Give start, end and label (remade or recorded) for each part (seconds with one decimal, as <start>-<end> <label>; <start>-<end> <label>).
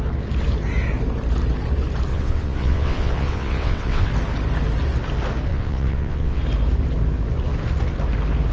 0.0-2.1 recorded; 2.1-4.1 remade; 4.1-5.5 recorded; 5.5-6.4 remade; 6.4-8.5 recorded